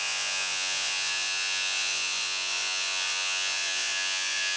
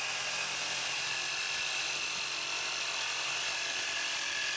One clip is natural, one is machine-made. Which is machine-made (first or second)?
first